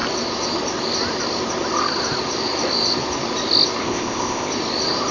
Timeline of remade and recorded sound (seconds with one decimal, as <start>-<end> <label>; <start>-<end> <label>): 0.0-3.8 recorded; 3.8-4.5 remade; 4.5-5.1 recorded